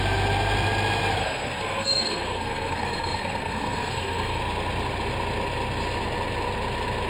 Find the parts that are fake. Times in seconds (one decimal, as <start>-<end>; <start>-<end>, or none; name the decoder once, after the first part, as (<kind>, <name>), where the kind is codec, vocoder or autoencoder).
1.2-4.4 (codec, SNAC)